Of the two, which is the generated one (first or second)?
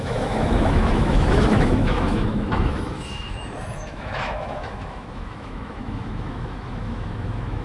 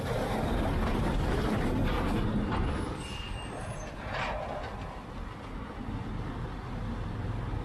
first